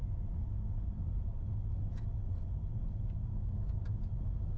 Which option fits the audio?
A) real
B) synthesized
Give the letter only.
A